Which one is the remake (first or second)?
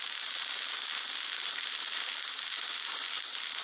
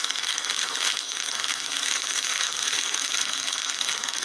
second